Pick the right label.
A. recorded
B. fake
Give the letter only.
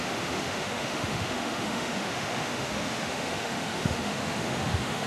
B